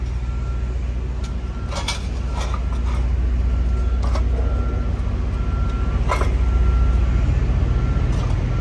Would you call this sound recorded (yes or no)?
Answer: yes